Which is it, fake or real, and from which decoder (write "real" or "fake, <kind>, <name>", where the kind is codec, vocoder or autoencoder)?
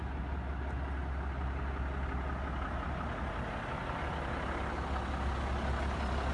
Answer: real